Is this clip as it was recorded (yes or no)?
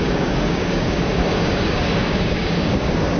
no